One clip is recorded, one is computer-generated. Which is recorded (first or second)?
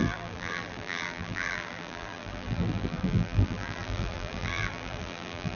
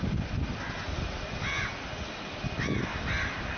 second